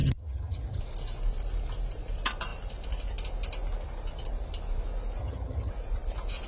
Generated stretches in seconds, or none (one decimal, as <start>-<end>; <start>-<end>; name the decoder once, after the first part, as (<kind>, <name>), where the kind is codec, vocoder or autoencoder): 0.0-0.8 (vocoder, HiFi-GAN); 5.2-5.7